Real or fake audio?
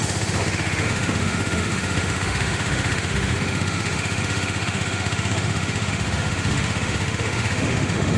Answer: fake